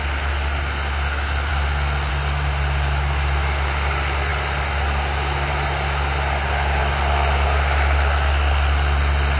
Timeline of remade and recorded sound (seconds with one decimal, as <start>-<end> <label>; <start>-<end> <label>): 0.0-9.4 recorded